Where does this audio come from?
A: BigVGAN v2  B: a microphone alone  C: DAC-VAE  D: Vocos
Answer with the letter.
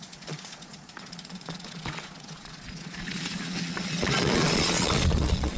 D